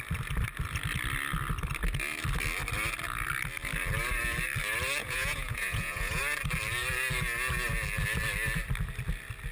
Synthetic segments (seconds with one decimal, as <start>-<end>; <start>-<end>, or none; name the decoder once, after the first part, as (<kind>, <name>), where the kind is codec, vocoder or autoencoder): 5.0-6.2 (vocoder, Vocos)